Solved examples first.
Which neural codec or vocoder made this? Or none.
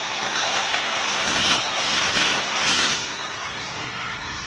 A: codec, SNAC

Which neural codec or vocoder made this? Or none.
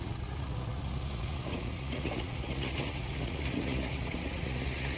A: vocoder, Vocos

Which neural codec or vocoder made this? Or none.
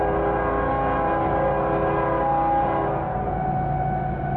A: none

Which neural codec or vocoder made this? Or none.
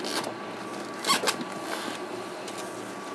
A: none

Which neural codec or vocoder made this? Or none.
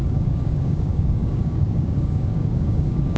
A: codec, DAC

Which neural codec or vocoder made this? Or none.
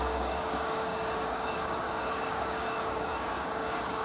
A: codec, DAC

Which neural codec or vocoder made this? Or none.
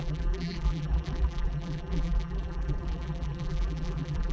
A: vocoder, BigVGAN v2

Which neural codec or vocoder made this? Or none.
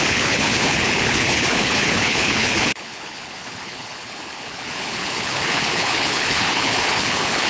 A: codec, HILCodec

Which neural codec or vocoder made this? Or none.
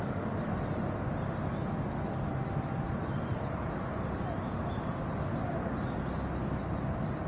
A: none